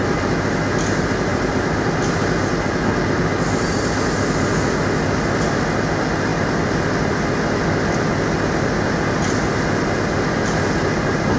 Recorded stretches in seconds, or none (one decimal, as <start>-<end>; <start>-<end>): 0.0-1.3; 2.0-11.4